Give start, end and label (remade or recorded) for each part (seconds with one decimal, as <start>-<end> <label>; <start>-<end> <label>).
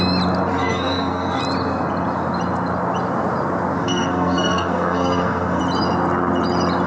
0.0-0.5 recorded; 0.5-1.4 remade; 1.4-3.8 recorded; 3.8-5.6 remade; 5.6-6.9 recorded